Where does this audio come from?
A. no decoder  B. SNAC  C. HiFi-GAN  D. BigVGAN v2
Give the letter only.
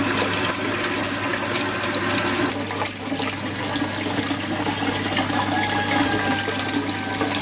A